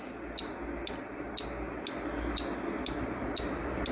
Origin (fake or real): real